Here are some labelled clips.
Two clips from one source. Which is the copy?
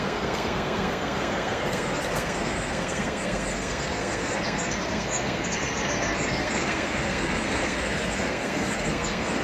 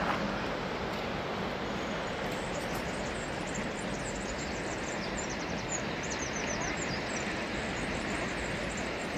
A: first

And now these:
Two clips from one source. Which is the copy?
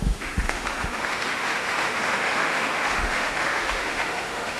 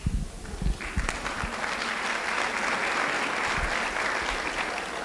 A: first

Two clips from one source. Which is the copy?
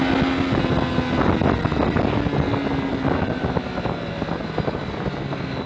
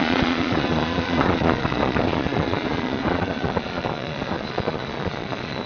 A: second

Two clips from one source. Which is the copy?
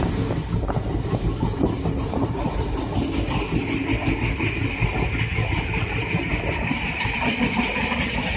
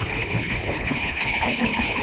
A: second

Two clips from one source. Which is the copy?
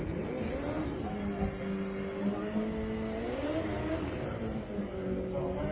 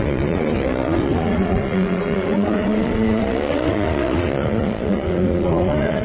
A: second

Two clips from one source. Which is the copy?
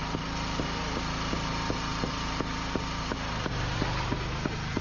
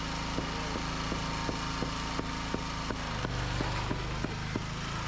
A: first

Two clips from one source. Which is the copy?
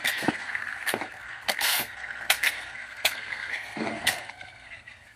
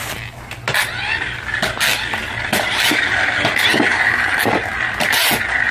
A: first